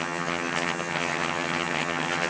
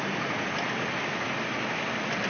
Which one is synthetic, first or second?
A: first